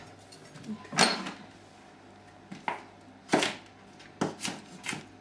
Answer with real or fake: real